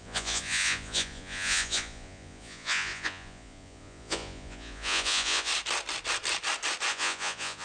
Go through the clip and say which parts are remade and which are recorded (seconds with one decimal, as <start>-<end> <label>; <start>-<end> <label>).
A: 0.0-5.5 remade; 5.5-6.9 recorded; 6.9-7.6 remade